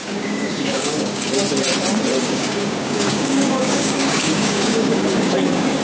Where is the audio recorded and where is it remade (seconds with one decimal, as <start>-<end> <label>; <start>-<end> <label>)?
0.0-1.3 remade; 1.3-2.2 recorded; 2.2-5.8 remade